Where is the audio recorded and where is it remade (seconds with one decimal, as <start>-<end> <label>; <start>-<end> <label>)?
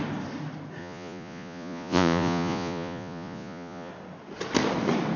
0.0-0.8 recorded; 0.8-3.9 remade; 3.9-5.2 recorded